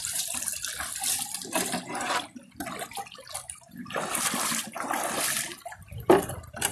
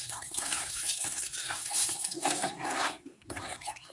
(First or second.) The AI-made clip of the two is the second